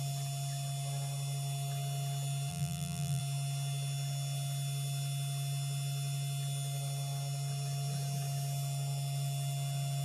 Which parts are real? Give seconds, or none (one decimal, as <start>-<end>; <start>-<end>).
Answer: 0.0-2.5; 3.2-10.0